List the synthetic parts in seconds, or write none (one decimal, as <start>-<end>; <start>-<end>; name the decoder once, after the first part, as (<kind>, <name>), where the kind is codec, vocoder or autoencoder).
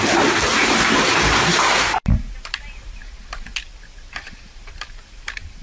0.0-3.0 (vocoder, BigVGAN v2); 3.7-5.6